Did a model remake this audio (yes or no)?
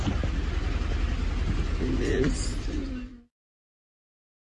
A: no